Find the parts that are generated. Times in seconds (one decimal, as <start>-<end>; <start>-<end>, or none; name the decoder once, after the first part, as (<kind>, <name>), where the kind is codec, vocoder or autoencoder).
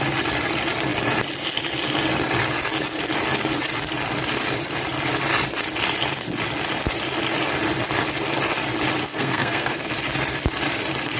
9.0-9.9 (codec, SNAC)